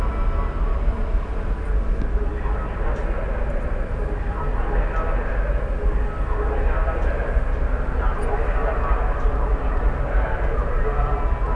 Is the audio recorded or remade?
recorded